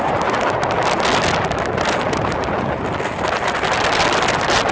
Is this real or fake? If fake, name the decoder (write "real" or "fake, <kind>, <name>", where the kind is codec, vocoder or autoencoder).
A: real